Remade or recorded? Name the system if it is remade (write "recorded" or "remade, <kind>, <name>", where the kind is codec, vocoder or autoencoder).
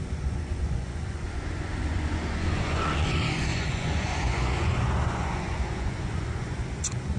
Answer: remade, vocoder, Vocos